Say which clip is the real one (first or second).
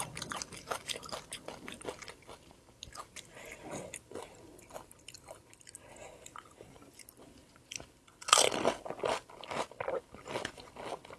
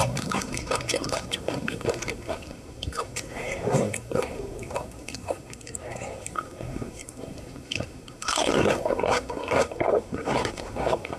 first